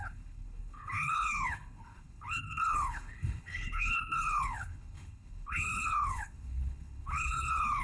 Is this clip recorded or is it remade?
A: remade